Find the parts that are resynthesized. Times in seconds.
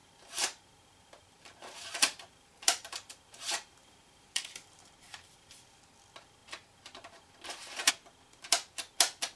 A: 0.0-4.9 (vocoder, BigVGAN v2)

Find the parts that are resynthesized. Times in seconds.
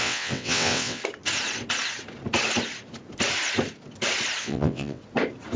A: 0.0-1.0 (vocoder, WaveNeXt); 4.4-5.0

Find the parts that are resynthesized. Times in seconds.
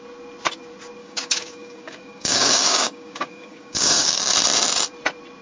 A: 1.0-4.2 (codec, DAC)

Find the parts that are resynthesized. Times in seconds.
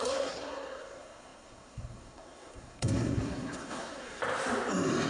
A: 0.0-4.2 (codec, SNAC)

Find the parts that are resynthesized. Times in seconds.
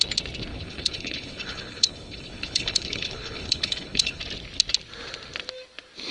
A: 0.5-4.2 (codec, HILCodec)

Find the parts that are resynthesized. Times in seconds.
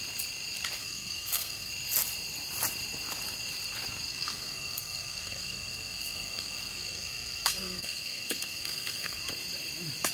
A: 0.8-1.7 (codec, SNAC); 4.1-9.2